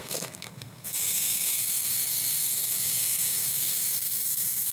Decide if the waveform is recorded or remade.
remade